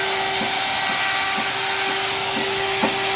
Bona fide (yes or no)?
yes